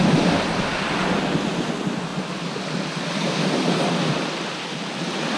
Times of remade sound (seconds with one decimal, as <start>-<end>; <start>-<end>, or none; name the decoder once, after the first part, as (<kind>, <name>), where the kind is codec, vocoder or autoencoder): none